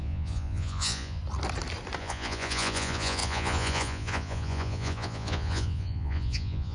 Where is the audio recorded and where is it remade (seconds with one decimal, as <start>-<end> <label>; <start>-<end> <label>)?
0.0-1.2 remade; 1.2-2.0 recorded; 2.0-6.7 remade